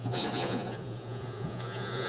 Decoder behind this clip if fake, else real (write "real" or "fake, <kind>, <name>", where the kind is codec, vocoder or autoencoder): fake, vocoder, Vocos